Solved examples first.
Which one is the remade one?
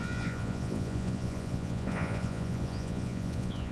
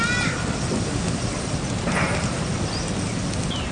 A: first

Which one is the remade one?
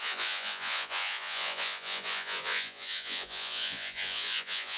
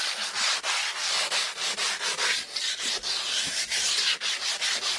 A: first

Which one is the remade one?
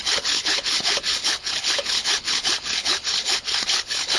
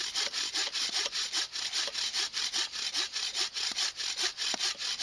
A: first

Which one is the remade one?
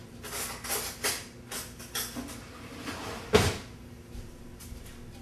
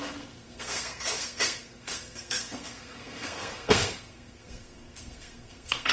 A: second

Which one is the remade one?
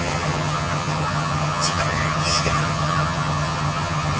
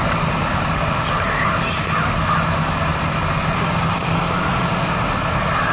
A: first